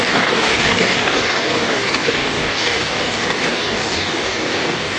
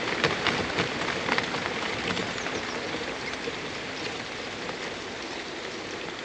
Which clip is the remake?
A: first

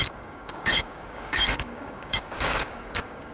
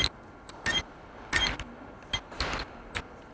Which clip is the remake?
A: first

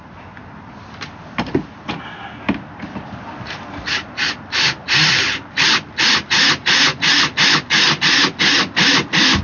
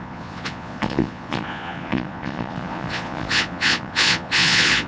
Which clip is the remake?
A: second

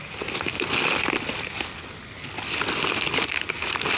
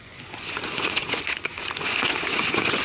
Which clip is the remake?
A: second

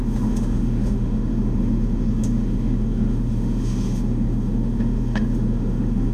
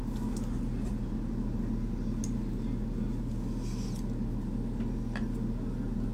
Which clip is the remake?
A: first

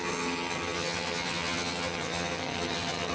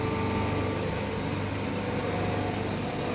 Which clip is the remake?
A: first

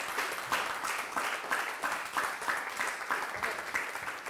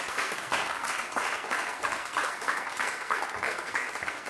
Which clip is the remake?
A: second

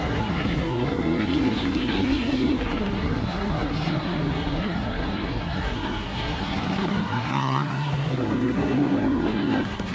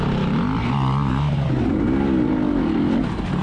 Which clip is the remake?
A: first